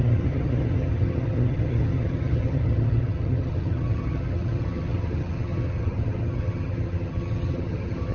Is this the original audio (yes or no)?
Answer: no